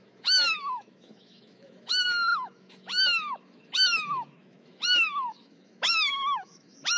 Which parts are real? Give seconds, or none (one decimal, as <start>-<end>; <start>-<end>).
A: none